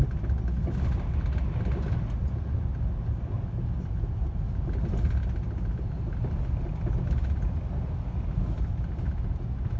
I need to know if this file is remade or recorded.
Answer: recorded